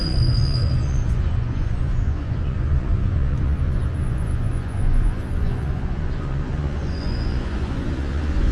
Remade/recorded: remade